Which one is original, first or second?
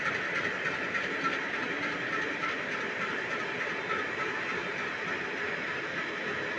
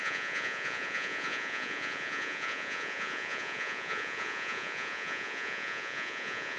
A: first